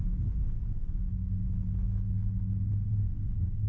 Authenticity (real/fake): real